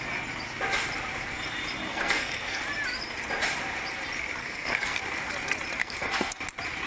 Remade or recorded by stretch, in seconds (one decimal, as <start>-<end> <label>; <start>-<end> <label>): 0.0-1.9 recorded; 1.9-2.6 remade; 2.6-4.4 recorded; 4.4-5.0 remade; 5.0-5.8 recorded; 5.8-6.4 remade; 6.4-6.9 recorded